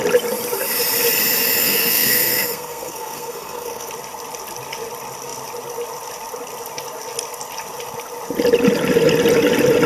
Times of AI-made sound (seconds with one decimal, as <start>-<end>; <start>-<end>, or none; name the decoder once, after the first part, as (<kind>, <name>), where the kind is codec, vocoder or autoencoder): 1.6-3.9 (codec, SNAC)

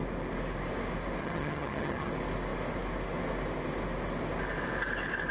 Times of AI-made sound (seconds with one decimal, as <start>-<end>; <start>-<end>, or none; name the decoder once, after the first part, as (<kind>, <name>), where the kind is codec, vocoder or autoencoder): 1.2-2.1 (vocoder, HiFi-GAN)

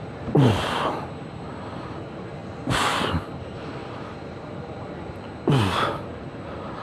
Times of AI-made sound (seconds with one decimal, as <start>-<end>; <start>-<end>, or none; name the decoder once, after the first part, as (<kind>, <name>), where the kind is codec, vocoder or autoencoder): 0.0-2.4 (vocoder, BigVGAN v2); 3.4-3.8

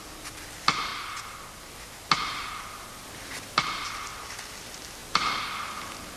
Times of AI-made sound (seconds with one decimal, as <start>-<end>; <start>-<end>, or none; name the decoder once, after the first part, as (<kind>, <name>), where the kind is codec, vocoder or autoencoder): none

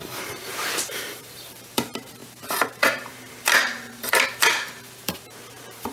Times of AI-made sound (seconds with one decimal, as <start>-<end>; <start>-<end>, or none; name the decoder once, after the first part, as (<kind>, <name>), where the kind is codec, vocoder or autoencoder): 0.0-5.9 (vocoder, BigVGAN v2)